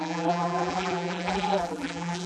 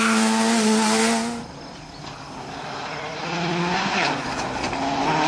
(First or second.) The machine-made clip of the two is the first